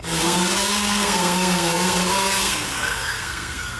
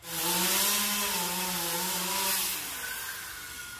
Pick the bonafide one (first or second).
second